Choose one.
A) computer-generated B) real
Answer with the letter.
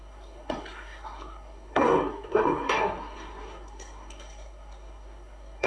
A